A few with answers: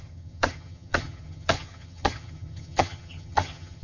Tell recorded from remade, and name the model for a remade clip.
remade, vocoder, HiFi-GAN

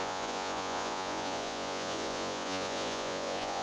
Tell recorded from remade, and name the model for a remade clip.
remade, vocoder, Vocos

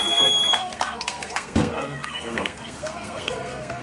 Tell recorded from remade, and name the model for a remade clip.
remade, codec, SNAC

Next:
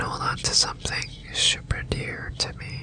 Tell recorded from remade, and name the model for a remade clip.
recorded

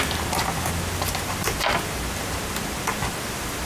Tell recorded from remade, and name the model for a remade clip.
recorded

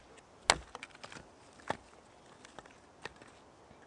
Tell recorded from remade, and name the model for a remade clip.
recorded